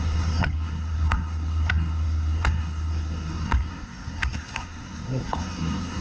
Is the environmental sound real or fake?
fake